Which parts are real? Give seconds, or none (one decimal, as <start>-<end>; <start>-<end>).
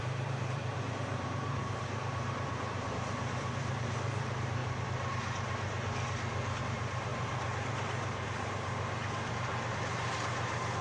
4.6-6.6